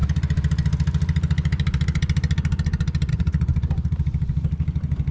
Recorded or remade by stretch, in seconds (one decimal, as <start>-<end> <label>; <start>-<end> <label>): 0.0-3.1 recorded; 3.1-3.5 remade; 3.5-5.1 recorded